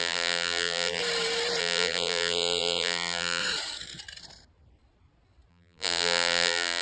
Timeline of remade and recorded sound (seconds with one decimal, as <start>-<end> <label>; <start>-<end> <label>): 0.0-1.0 remade; 1.0-1.6 recorded; 1.6-3.4 remade; 3.4-5.5 recorded; 5.5-6.8 remade